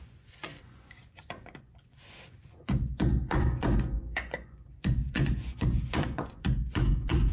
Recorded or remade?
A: remade